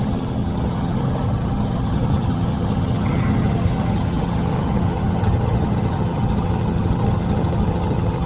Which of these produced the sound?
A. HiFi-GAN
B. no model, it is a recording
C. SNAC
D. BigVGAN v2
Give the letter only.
A